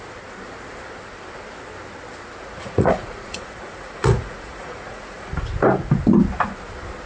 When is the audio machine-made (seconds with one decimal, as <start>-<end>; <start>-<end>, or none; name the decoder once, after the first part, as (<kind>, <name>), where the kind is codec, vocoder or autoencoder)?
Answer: 2.4-5.3 (vocoder, Vocos)